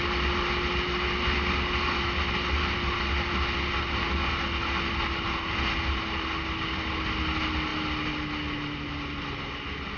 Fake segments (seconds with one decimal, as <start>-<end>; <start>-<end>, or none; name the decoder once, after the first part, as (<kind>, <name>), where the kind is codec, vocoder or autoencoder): none